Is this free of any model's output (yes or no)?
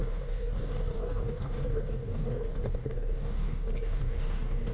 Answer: no